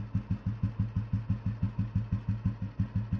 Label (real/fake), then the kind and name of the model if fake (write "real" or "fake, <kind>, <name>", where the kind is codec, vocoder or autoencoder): real